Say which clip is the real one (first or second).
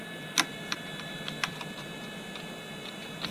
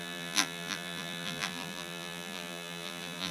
first